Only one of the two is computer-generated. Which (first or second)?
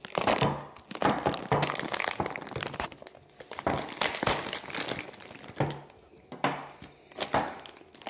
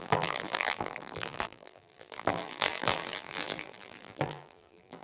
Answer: second